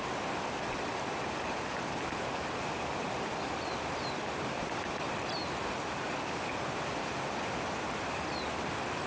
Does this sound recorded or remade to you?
recorded